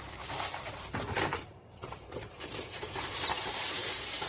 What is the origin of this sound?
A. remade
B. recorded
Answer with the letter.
A